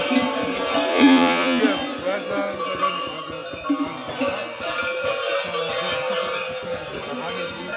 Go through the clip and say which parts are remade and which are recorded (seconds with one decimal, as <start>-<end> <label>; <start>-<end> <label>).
0.0-0.9 recorded; 0.9-1.6 remade; 1.6-7.8 recorded